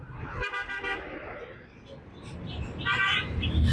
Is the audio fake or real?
real